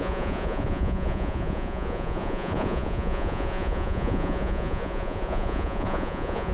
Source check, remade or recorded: remade